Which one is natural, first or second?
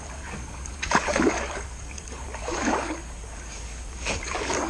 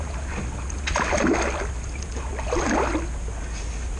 second